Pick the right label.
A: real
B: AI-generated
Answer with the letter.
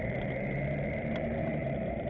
B